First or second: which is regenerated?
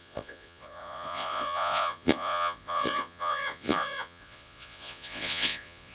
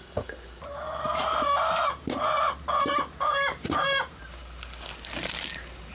first